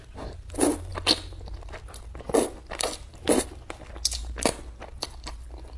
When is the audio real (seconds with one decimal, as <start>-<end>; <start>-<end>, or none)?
0.0-5.8